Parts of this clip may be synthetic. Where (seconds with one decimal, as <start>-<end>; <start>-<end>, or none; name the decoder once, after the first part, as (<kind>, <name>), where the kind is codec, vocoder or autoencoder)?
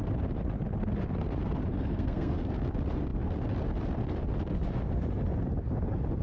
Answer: 1.7-2.6 (codec, SNAC)